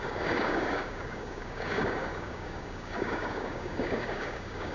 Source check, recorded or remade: remade